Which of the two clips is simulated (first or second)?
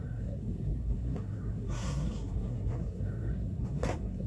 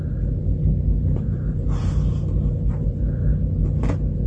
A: first